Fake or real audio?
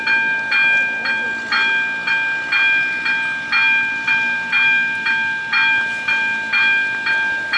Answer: real